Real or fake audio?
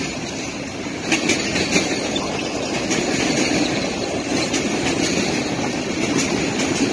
real